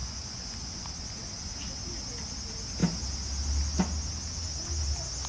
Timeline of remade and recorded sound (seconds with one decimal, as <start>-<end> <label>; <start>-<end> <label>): 0.0-0.9 remade; 0.9-5.3 recorded

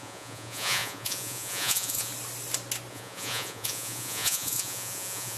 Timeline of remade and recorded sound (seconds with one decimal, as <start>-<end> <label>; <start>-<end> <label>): 0.0-2.1 remade; 2.1-2.9 recorded; 2.9-5.4 remade

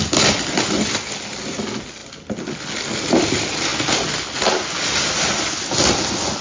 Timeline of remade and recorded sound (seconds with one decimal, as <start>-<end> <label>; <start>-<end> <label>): 0.0-6.4 recorded